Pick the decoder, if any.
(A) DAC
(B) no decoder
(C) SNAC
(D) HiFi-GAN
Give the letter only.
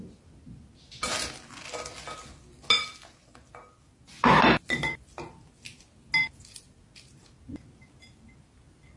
B